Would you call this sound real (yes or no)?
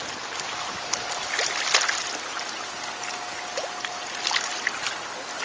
yes